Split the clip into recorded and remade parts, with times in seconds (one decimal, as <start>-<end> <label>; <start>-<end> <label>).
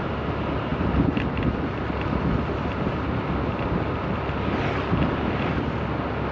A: 0.0-6.3 recorded